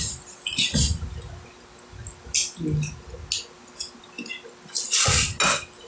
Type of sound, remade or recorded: recorded